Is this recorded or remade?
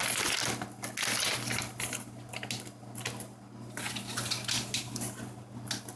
recorded